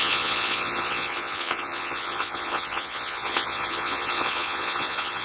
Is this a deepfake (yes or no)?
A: yes